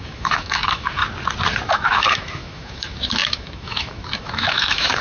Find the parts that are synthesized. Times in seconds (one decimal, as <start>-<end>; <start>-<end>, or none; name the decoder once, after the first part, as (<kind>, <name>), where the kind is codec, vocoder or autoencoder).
0.0-1.0 (autoencoder, DAC-VAE); 1.7-5.0